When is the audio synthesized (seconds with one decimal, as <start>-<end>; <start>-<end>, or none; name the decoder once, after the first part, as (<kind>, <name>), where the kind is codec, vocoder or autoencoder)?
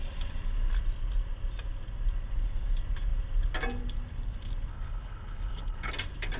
4.7-5.9 (codec, HILCodec)